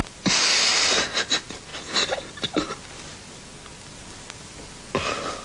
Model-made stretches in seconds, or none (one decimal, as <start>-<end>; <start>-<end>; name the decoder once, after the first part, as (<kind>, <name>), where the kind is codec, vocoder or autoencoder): none